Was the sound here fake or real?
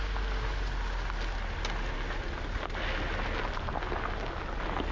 real